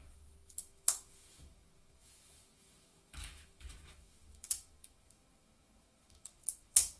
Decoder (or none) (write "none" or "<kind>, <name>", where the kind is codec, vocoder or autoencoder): autoencoder, DAC-VAE